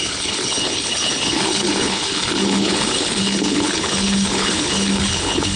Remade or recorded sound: remade